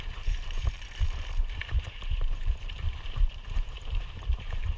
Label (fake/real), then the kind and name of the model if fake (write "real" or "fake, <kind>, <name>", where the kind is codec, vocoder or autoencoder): fake, vocoder, BigVGAN v2